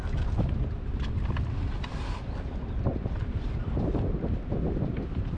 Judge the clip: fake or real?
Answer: real